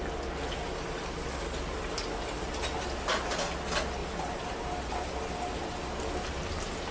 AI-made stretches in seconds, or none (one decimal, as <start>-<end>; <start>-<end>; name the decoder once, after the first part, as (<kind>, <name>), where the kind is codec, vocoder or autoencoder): none